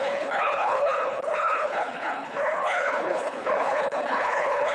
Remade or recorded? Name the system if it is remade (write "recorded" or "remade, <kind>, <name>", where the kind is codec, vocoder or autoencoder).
remade, codec, HILCodec